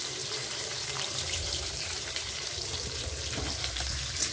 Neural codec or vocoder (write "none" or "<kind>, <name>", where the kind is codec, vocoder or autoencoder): vocoder, BigVGAN v2